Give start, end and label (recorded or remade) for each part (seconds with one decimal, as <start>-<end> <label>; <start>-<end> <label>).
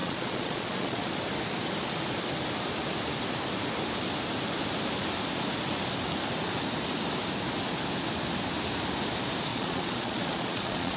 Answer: 0.0-1.1 remade; 1.1-9.5 recorded; 9.5-11.0 remade